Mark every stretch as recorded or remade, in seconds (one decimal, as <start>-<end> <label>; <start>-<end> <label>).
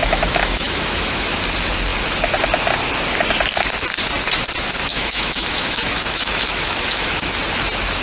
0.0-1.4 remade; 1.4-4.9 recorded; 4.9-7.3 remade; 7.3-8.0 recorded